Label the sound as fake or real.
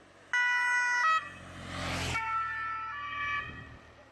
real